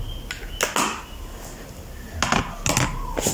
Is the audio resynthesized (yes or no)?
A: no